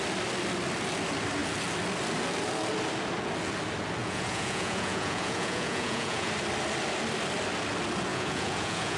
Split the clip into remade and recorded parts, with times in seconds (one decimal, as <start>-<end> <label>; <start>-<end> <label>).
0.0-4.0 recorded; 4.0-6.3 remade; 6.3-8.1 recorded; 8.1-9.0 remade